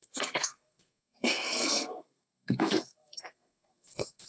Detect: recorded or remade remade